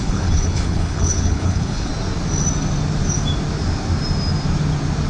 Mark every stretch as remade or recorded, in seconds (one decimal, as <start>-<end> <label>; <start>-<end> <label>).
0.0-1.9 remade; 1.9-5.1 recorded